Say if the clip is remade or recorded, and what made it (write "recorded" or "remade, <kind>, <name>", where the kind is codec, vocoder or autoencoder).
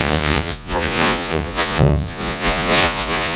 remade, vocoder, Vocos